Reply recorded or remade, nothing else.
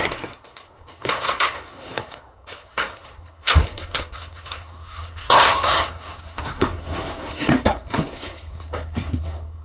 remade